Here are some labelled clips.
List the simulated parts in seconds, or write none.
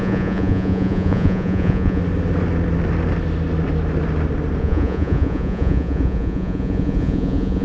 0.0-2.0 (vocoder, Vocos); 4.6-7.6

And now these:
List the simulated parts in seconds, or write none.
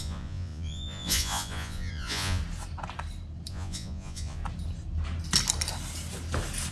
0.0-2.4 (vocoder, Vocos); 3.5-4.4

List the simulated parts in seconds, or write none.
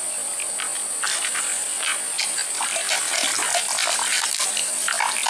none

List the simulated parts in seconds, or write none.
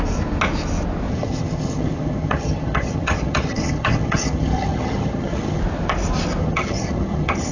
1.1-5.6 (vocoder, HiFi-GAN); 6.4-7.5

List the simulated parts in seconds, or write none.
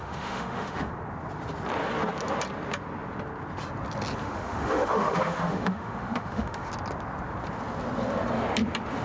0.0-0.9 (autoencoder, DAC-VAE); 4.2-6.7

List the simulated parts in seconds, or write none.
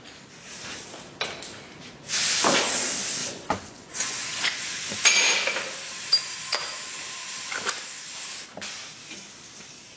3.2-5.2 (vocoder, Vocos)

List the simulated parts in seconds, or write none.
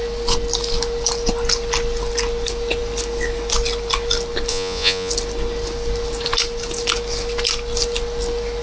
4.5-5.1 (vocoder, Vocos)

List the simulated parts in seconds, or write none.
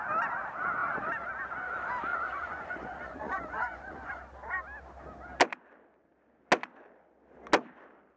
2.1-4.2 (vocoder, Vocos)